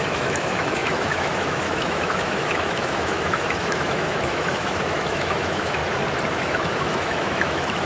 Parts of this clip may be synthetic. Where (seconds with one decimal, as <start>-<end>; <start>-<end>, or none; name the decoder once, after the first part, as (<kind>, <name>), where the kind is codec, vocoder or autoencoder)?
0.0-5.8 (autoencoder, DAC-VAE); 6.3-7.9